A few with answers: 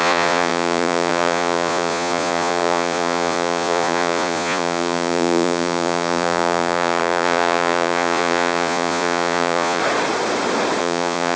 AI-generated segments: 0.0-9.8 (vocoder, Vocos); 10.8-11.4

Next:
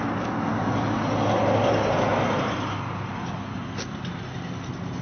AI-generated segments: none

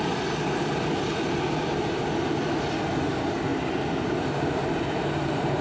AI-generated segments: 1.6-2.3 (vocoder, BigVGAN v2); 3.5-5.6

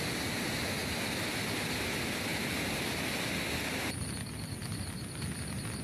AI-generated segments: 0.8-1.3 (vocoder, BigVGAN v2); 2.3-3.2

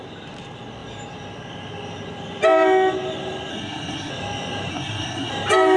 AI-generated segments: 3.5-4.1 (codec, SNAC); 4.7-5.3

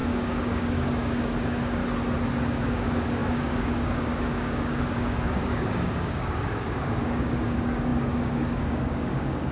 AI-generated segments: 0.0-1.8 (codec, DAC); 2.5-9.5